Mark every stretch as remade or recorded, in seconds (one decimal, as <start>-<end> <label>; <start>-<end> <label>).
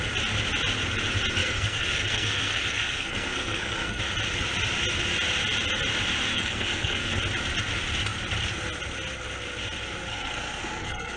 0.0-1.4 recorded; 1.4-4.0 remade; 4.0-6.3 recorded; 6.3-7.2 remade; 7.2-10.1 recorded; 10.1-11.2 remade